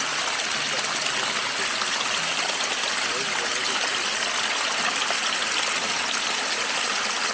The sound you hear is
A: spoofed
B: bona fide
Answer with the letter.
B